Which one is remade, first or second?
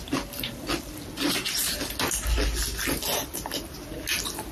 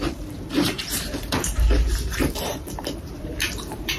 second